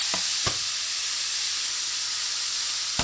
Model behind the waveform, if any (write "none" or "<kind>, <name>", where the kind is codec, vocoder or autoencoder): none